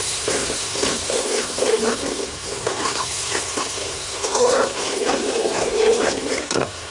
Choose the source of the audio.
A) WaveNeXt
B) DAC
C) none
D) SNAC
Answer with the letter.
D